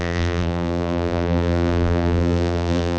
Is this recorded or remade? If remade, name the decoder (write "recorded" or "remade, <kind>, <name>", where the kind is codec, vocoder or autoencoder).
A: remade, vocoder, BigVGAN v2